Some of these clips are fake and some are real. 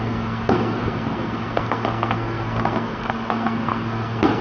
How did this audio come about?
fake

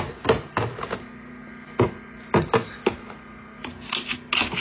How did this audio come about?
real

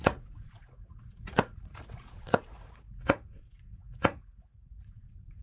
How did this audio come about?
fake